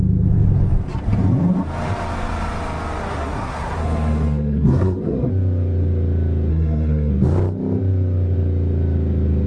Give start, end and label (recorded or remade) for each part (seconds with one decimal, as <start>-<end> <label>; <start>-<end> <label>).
0.0-3.0 recorded; 3.0-5.3 remade; 5.3-6.5 recorded; 6.5-7.1 remade; 7.1-9.5 recorded